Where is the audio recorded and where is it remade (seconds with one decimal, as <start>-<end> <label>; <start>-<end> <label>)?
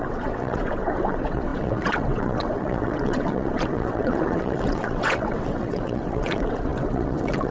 0.0-7.5 remade